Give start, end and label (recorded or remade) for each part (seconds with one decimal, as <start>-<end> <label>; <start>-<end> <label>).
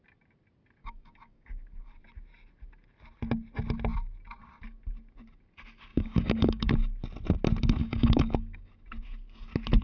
0.0-0.8 recorded; 0.8-1.6 remade; 1.6-5.9 recorded; 5.9-6.7 remade; 6.7-7.8 recorded; 7.8-8.7 remade; 8.7-9.8 recorded